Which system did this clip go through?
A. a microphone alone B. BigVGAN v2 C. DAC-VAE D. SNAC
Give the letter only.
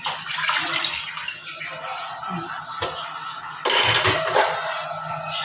A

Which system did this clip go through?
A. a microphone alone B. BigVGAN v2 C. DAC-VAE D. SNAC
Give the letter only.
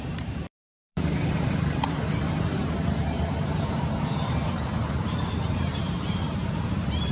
B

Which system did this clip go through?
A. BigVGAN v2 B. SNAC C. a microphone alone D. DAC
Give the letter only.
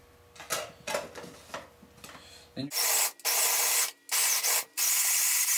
C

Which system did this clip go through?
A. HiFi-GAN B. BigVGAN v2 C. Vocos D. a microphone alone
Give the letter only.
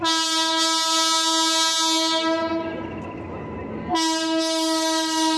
D